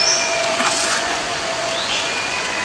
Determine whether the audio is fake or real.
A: fake